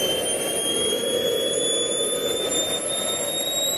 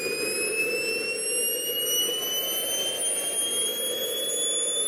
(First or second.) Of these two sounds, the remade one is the first